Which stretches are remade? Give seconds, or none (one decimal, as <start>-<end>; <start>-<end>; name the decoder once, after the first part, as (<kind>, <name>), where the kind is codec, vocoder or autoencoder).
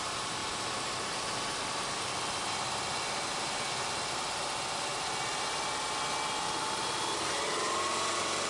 0.0-0.4 (vocoder, BigVGAN v2); 4.1-4.9; 8.1-8.5